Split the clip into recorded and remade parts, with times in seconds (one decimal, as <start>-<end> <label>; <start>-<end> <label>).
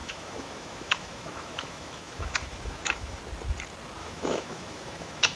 0.0-3.2 remade; 3.2-4.0 recorded; 4.0-5.4 remade